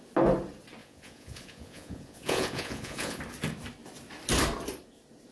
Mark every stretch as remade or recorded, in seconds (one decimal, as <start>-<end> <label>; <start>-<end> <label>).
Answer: 0.0-0.8 recorded; 0.8-3.2 remade; 3.2-5.3 recorded